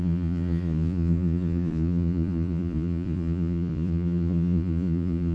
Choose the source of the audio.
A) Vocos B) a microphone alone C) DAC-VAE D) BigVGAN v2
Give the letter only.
A